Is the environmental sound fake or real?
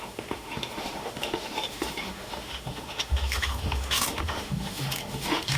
fake